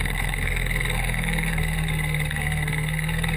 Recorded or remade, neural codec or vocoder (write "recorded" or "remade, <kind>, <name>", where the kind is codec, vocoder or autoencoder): remade, codec, SNAC